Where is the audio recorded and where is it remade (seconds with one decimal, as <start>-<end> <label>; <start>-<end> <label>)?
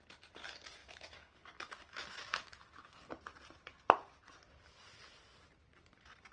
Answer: 0.0-0.8 recorded; 0.8-3.1 remade; 3.1-6.3 recorded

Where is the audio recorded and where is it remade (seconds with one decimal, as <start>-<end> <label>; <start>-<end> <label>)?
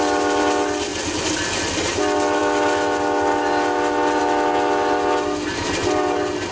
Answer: 0.0-6.5 recorded